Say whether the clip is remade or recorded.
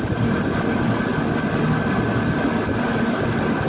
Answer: recorded